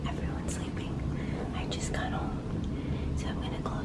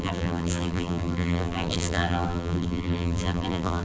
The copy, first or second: second